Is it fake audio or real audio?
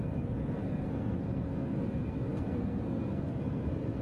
fake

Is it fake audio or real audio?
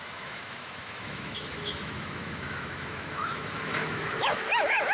fake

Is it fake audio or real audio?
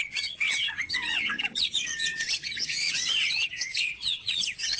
fake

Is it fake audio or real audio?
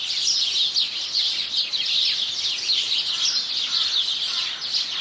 real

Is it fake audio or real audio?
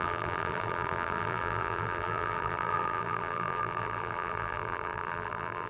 fake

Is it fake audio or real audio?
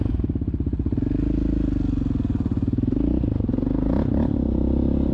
real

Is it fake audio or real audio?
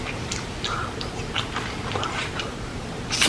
real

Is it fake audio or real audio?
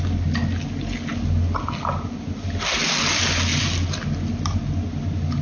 real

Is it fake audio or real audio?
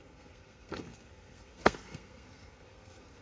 fake